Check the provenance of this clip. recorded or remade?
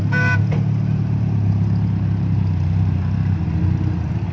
recorded